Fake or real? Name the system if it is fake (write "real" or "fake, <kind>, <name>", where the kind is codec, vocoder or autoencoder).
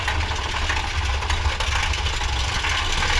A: real